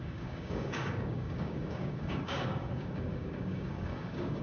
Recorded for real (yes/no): no